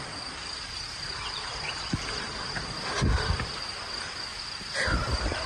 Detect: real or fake fake